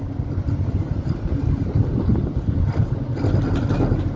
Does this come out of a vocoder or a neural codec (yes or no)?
no